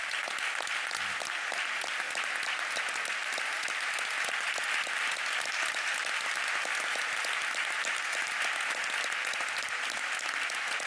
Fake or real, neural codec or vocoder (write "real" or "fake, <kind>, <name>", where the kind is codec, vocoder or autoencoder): real